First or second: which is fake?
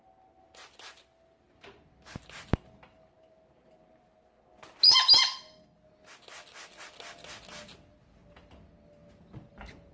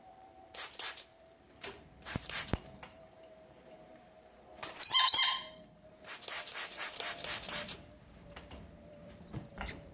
second